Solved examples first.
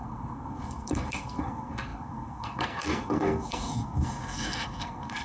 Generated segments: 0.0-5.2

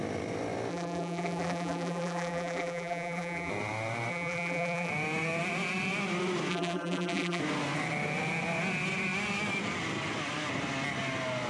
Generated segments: 0.7-3.5; 4.1-4.9; 6.5-7.4

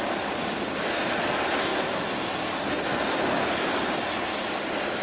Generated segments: none

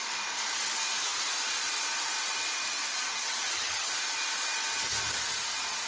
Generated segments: 2.9-3.9

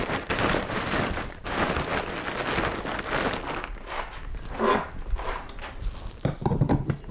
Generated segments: 0.0-1.9; 6.1-7.1

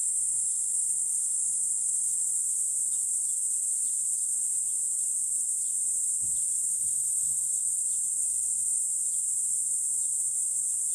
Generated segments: 0.0-2.4; 6.7-7.8; 8.2-8.8

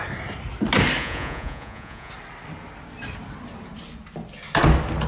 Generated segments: 1.0-2.1